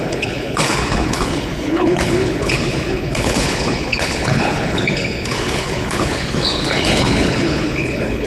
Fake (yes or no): yes